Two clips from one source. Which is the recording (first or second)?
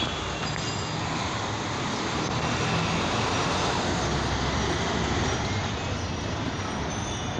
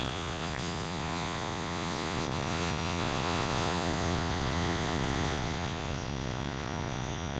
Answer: first